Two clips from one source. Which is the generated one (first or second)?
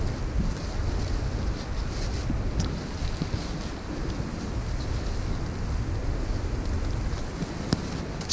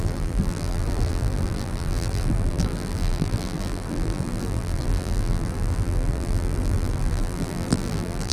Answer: second